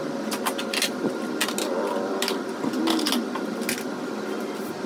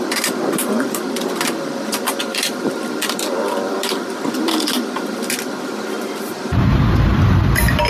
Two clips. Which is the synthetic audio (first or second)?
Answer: second